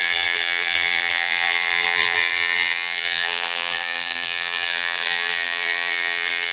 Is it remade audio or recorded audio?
remade